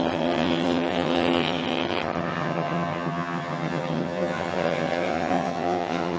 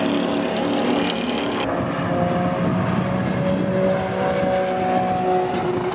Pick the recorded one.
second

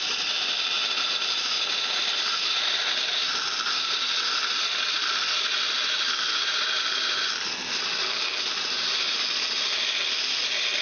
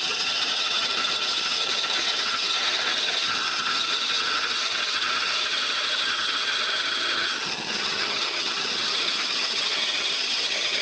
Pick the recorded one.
first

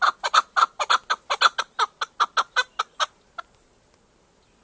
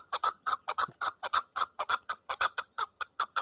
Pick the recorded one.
first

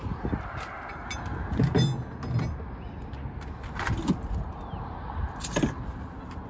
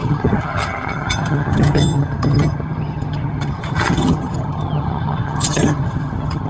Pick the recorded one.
first